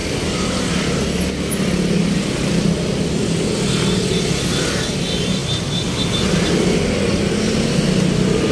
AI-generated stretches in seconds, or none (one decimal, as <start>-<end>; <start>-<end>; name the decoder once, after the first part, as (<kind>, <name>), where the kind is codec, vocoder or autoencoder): none